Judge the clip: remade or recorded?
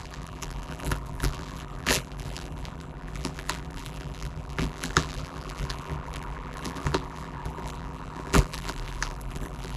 remade